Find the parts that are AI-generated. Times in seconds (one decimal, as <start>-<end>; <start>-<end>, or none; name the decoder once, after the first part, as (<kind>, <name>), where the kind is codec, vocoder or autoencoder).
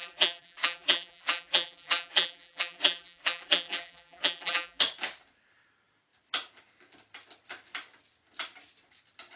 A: 0.0-4.8 (vocoder, BigVGAN v2)